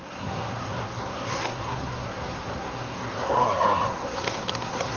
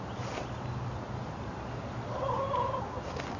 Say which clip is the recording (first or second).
second